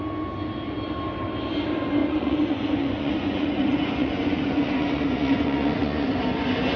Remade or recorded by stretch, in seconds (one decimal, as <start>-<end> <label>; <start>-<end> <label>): 0.0-2.0 recorded; 2.0-6.1 remade; 6.1-6.8 recorded